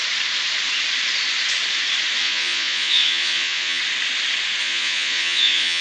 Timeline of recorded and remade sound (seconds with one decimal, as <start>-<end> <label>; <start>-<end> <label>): 0.0-2.2 recorded; 2.2-3.8 remade; 3.8-4.6 recorded; 4.6-5.8 remade